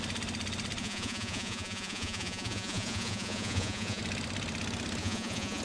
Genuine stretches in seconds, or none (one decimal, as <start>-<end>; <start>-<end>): 0.0-0.8; 4.0-5.0